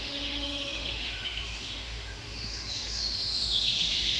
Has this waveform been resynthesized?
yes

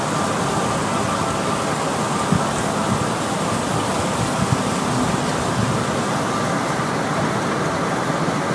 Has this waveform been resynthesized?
no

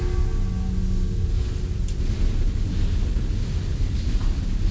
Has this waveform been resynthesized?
no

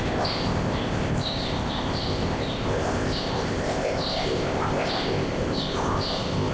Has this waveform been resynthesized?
yes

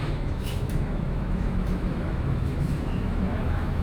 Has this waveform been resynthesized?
yes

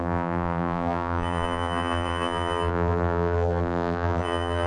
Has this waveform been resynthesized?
yes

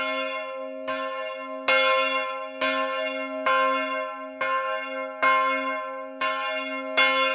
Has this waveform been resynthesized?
no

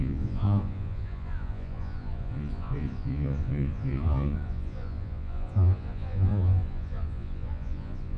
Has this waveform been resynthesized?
yes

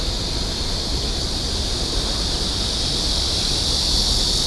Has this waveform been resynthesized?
no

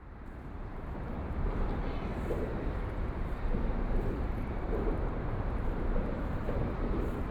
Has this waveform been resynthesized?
yes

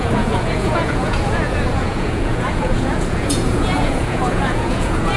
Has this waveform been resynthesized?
yes